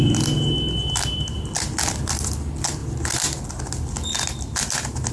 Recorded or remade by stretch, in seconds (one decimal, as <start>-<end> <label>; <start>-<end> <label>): 0.0-5.1 recorded